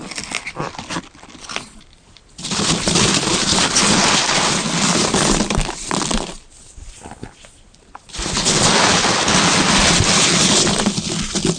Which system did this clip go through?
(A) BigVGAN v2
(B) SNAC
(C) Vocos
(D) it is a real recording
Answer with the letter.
D